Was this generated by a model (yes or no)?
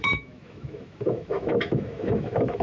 yes